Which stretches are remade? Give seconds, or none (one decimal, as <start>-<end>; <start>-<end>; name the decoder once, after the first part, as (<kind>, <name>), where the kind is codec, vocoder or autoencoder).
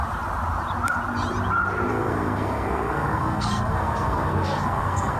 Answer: 1.9-5.2 (codec, SNAC)